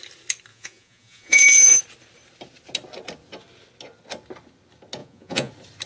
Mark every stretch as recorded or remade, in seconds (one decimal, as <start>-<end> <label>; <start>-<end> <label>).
0.0-0.5 recorded; 0.5-1.8 remade; 1.8-5.0 recorded; 5.0-5.5 remade; 5.5-5.9 recorded